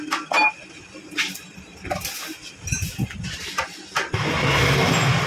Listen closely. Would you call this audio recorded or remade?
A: recorded